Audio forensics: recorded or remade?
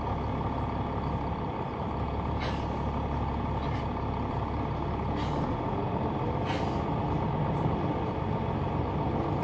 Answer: recorded